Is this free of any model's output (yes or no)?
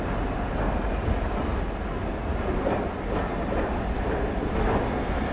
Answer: yes